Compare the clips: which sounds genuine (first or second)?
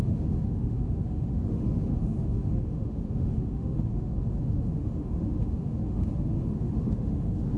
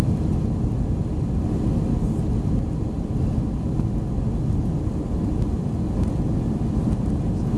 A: second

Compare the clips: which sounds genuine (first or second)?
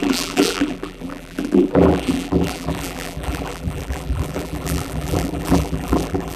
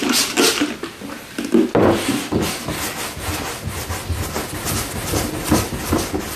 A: second